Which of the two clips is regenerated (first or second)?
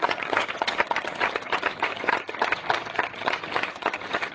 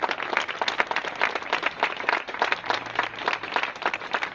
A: first